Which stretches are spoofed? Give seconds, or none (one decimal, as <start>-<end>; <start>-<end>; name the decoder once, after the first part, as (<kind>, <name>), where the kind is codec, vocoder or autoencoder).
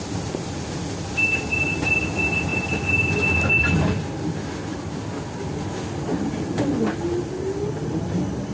none